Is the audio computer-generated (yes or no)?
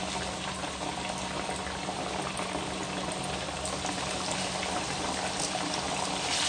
no